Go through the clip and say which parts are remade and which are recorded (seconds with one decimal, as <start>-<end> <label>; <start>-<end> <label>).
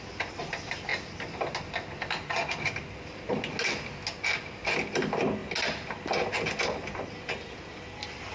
0.0-8.3 recorded